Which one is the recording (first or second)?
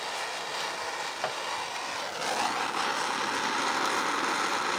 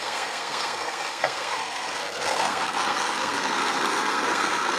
first